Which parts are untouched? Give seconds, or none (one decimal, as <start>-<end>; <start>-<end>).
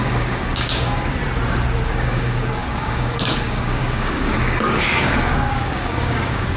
1.2-1.8